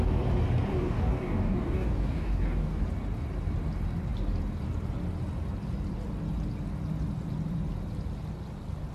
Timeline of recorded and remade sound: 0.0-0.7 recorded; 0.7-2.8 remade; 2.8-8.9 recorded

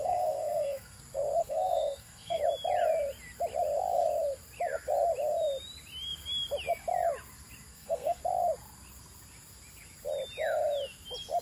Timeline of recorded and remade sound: 0.0-1.0 remade; 1.0-1.4 recorded; 1.4-2.4 remade; 2.4-7.7 recorded; 7.7-8.2 remade; 8.2-11.4 recorded

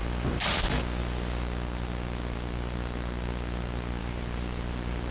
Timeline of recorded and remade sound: 0.0-0.6 remade; 0.6-4.0 recorded; 4.0-5.1 remade

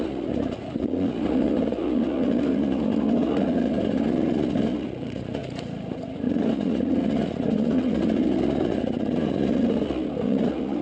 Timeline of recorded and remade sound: 0.0-10.8 remade

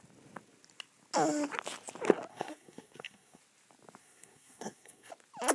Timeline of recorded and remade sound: 0.0-2.3 recorded; 2.3-3.4 remade; 3.4-4.0 recorded; 4.0-5.1 remade; 5.1-5.5 recorded

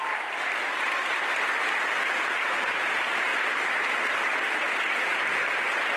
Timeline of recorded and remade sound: 0.0-0.6 remade; 0.6-2.2 recorded; 2.2-3.3 remade; 3.3-4.1 recorded; 4.1-4.6 remade; 4.6-5.2 recorded; 5.2-6.0 remade

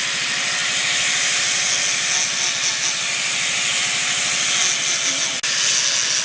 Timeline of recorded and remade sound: 0.0-6.2 recorded